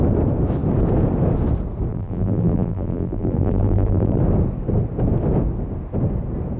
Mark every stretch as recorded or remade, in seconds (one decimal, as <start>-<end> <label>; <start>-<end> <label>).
0.0-1.9 recorded; 1.9-4.2 remade; 4.2-6.6 recorded

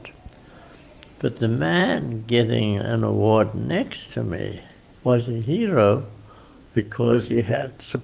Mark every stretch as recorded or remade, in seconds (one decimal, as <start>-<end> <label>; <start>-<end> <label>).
0.0-4.7 recorded; 4.7-5.3 remade; 5.3-6.4 recorded; 6.4-8.0 remade

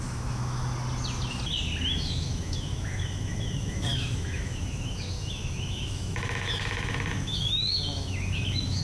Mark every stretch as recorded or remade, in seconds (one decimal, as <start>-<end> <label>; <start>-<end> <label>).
0.0-0.6 remade; 0.6-1.9 recorded; 1.9-8.8 remade

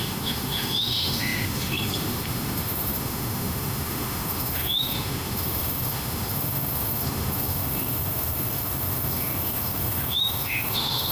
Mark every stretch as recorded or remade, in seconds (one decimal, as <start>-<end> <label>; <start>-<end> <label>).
0.0-11.1 remade

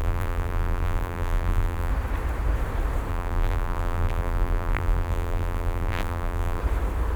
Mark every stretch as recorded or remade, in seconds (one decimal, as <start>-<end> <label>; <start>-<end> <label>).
0.0-1.9 remade; 1.9-3.1 recorded; 3.1-6.6 remade; 6.6-7.2 recorded

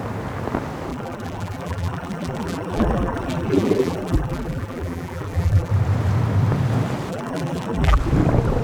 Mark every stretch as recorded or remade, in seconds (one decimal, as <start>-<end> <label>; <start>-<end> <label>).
0.0-0.9 recorded; 0.9-5.7 remade; 5.7-7.1 recorded; 7.1-8.0 remade; 8.0-8.6 recorded

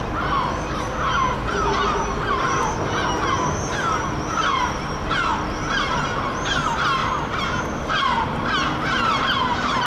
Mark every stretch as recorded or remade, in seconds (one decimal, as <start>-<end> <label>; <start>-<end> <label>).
0.0-9.9 recorded